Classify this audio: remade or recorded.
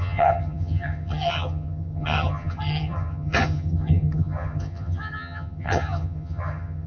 remade